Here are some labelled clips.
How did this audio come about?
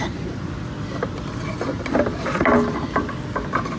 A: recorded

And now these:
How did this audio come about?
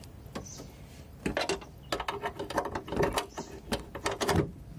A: recorded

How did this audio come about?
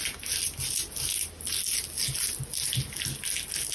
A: recorded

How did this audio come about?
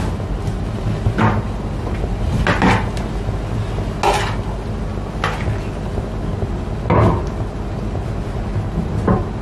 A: recorded